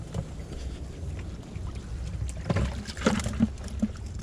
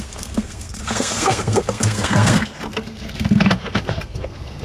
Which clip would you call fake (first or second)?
second